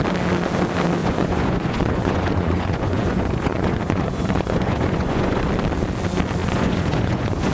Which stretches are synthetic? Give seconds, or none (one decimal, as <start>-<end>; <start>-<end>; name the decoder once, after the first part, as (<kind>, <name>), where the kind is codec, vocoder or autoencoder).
1.0-5.5 (vocoder, Vocos); 6.4-7.5